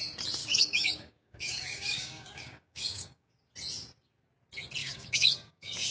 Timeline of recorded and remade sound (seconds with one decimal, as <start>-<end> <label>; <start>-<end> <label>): 0.0-0.4 recorded; 0.4-3.3 remade; 3.3-4.8 recorded; 4.8-5.9 remade